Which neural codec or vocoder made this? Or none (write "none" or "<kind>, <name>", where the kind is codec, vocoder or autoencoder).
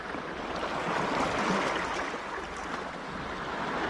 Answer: none